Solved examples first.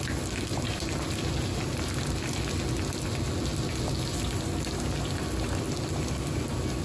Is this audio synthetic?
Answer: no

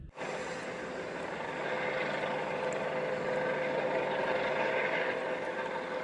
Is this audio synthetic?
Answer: no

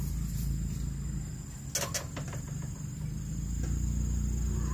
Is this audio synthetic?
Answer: no